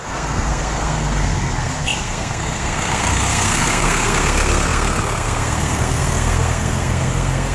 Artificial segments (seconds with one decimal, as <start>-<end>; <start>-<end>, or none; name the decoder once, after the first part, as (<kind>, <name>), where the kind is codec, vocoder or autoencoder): 0.0-7.5 (codec, SNAC)

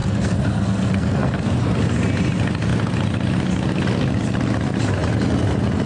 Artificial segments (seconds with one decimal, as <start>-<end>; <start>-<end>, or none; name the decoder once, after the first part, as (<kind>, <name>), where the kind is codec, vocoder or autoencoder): 0.0-1.6 (codec, SNAC)